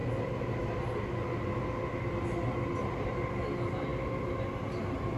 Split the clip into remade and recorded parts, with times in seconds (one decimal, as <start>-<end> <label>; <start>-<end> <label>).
0.0-5.2 recorded